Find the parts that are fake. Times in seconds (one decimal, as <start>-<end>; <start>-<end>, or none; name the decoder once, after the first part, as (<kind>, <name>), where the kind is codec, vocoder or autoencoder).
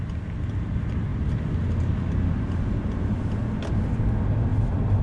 4.5-5.0 (vocoder, BigVGAN v2)